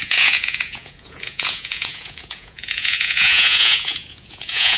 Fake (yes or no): yes